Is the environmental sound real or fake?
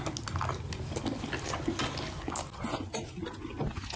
real